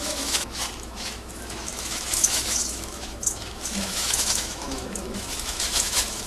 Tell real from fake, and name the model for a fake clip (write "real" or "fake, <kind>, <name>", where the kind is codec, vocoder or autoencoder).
fake, autoencoder, DAC-VAE